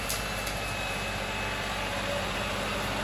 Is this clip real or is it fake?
real